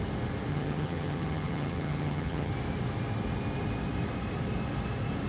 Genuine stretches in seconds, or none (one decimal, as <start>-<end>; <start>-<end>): 0.0-0.5; 2.5-5.3

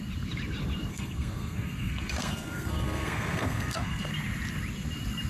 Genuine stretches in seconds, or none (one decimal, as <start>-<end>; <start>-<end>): 0.0-0.9; 4.1-5.3

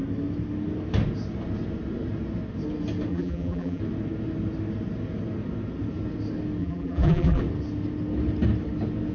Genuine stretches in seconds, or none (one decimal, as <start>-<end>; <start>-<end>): 0.0-3.1; 3.8-6.6; 7.4-9.1

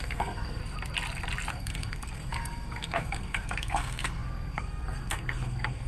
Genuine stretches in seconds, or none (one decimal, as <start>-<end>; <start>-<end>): 0.6-1.5